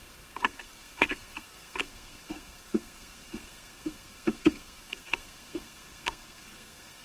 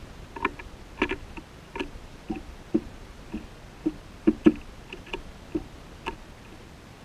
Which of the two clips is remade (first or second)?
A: first